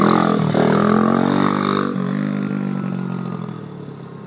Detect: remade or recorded recorded